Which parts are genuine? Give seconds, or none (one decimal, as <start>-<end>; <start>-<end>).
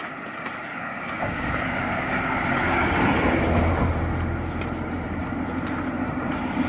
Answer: 0.0-0.7; 3.0-6.7